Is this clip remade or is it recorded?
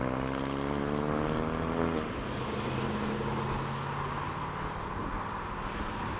recorded